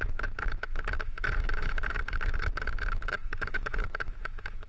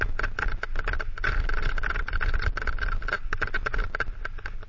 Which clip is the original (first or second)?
second